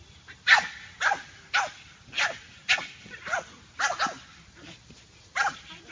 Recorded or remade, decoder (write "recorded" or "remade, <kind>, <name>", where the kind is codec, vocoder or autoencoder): recorded